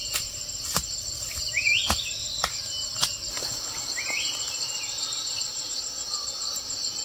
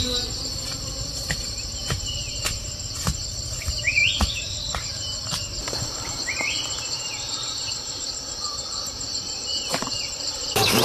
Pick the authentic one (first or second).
first